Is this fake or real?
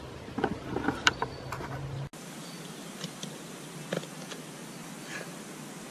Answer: real